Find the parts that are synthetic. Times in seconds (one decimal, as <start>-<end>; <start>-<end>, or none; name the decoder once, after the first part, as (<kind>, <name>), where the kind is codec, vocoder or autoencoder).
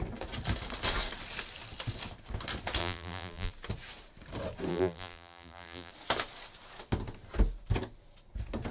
2.8-3.5 (vocoder, BigVGAN v2); 4.7-5.9